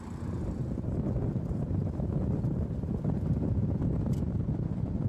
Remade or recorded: recorded